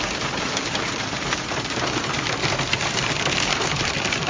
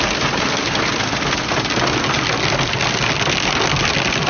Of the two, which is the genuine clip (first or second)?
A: second